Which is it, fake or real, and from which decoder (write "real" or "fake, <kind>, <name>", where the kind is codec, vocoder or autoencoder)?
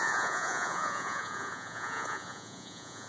fake, vocoder, Vocos